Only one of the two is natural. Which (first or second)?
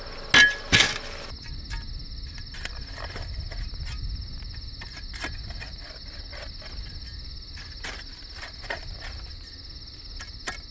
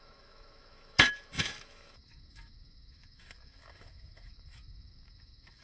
first